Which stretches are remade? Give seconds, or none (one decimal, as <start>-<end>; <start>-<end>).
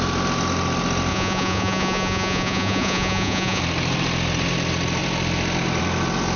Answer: 1.1-3.6